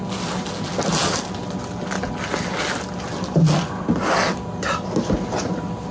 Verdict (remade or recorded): recorded